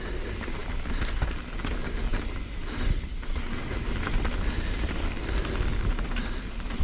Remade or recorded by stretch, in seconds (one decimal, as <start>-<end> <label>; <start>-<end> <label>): 0.0-6.8 recorded